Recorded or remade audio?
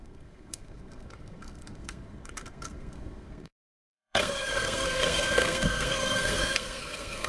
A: remade